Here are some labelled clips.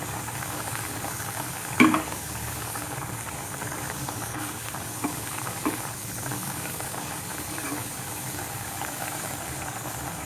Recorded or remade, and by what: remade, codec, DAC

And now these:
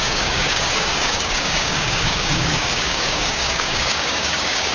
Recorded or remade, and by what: remade, codec, DAC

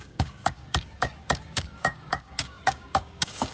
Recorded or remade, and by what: remade, codec, DAC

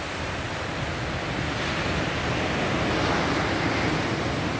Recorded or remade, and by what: recorded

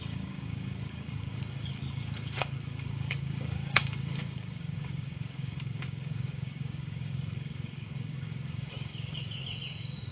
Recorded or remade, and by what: remade, codec, DAC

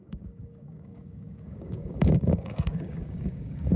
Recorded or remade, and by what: remade, codec, DAC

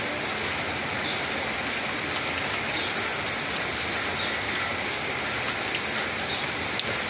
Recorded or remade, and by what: recorded